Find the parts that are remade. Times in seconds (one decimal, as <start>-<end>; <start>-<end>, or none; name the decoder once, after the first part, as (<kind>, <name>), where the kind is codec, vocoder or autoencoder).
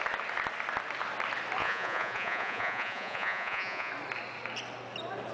1.6-3.9 (vocoder, Vocos)